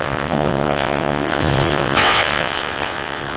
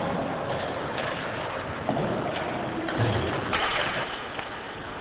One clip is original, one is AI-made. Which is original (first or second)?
second